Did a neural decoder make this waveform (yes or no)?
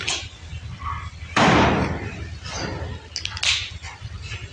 no